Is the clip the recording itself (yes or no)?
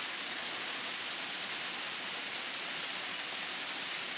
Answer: yes